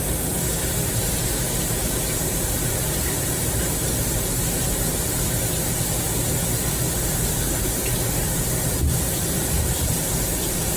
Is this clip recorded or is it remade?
remade